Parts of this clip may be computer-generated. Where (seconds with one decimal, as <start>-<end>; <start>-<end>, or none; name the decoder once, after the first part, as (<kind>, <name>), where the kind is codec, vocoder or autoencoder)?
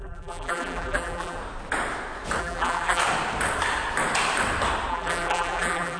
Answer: 0.0-1.4 (vocoder, BigVGAN v2); 2.4-3.0; 4.9-6.0